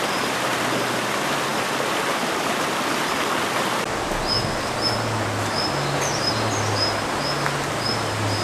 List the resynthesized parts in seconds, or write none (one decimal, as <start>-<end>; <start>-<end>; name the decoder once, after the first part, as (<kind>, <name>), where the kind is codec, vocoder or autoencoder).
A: none

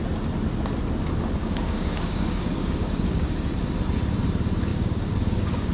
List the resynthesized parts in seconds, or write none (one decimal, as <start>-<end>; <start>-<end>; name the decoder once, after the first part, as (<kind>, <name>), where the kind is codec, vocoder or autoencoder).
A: 1.4-3.3 (codec, DAC); 4.7-5.7